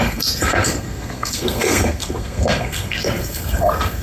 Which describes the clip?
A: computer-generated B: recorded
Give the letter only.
A